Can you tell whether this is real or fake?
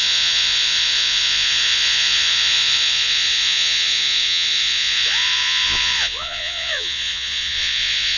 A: fake